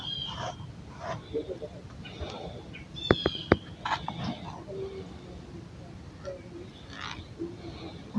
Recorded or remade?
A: recorded